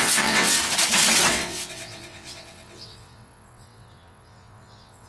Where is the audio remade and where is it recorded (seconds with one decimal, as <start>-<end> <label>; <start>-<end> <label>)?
0.0-0.6 remade; 0.6-1.3 recorded; 1.3-5.1 remade